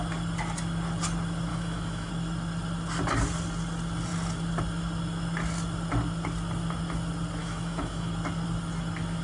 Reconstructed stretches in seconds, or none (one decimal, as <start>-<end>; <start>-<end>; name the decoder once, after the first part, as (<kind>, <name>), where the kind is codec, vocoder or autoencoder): 1.5-2.1 (autoencoder, DAC-VAE); 7.4-8.1